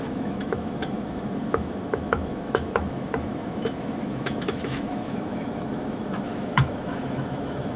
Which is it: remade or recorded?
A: remade